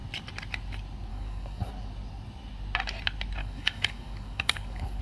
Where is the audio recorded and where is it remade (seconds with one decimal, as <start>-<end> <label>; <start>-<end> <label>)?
0.0-1.1 recorded; 1.1-1.7 remade; 1.7-3.4 recorded; 3.4-5.0 remade